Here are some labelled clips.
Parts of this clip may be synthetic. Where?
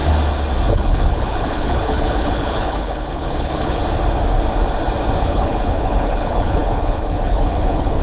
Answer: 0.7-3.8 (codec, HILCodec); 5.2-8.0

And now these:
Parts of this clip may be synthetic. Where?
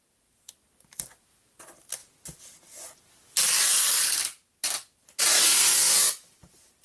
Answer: none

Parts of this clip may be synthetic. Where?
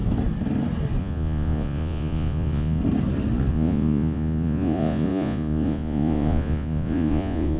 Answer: 1.0-2.8 (vocoder, Vocos); 3.5-7.6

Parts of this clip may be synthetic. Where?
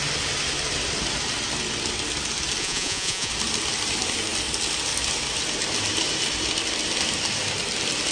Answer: 2.6-3.3 (vocoder, Vocos)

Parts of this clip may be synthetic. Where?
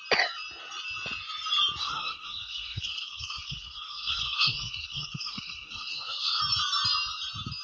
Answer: 1.8-6.4 (codec, SNAC)